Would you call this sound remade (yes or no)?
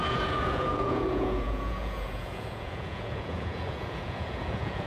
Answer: yes